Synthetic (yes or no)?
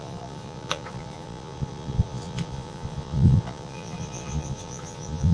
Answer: yes